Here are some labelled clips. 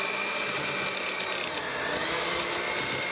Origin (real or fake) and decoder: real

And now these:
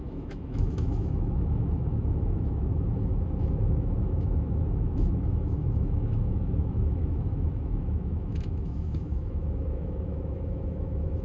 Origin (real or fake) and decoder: fake, autoencoder, DAC-VAE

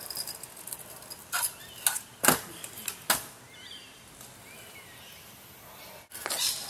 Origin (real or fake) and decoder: real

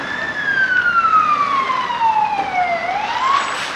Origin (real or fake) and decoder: real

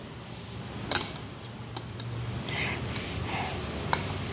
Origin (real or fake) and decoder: real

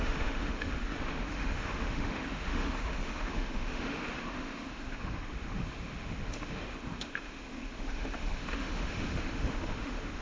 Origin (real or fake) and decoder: fake, autoencoder, DAC-VAE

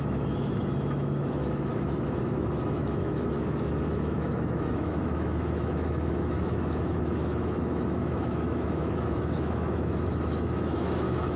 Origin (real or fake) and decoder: fake, autoencoder, DAC-VAE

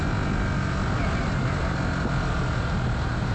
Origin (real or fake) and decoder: real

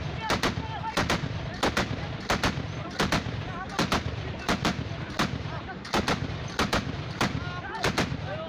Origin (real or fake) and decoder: real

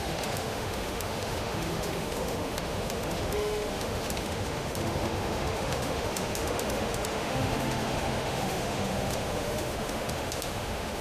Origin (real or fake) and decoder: fake, autoencoder, DAC-VAE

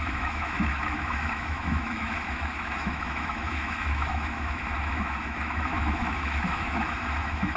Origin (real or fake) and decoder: fake, autoencoder, DAC-VAE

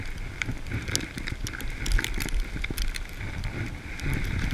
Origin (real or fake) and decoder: real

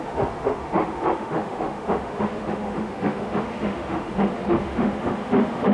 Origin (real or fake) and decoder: fake, autoencoder, DAC-VAE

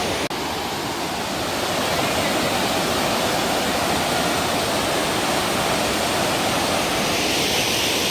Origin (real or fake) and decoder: real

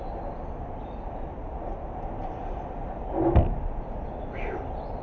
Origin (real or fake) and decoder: real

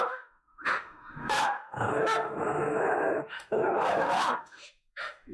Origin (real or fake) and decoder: fake, autoencoder, DAC-VAE